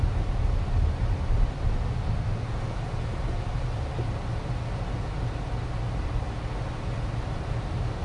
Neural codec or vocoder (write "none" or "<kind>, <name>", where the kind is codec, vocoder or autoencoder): none